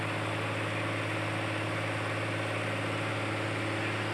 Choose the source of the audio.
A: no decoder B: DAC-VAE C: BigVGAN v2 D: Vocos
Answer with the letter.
A